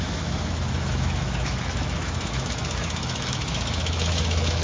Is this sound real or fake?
fake